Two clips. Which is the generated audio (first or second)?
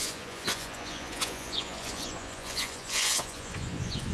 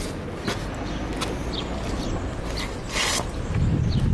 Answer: first